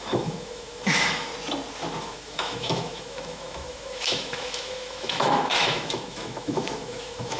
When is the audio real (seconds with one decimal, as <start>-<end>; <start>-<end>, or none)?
1.3-2.0

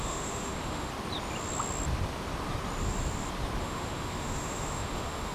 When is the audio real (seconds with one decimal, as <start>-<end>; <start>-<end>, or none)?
0.9-3.6

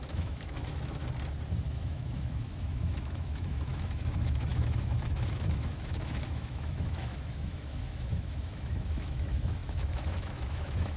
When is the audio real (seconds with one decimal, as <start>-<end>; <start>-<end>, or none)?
1.0-1.7

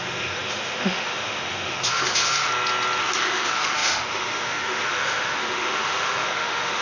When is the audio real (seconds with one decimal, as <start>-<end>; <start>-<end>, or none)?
2.5-3.0

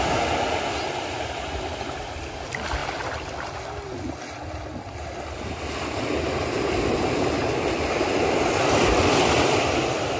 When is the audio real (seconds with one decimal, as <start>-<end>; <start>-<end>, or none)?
0.0-10.2

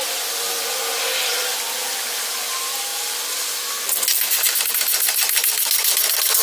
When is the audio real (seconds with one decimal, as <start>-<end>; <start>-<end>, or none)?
0.0-6.4